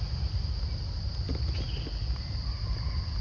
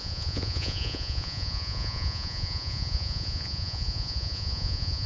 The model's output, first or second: second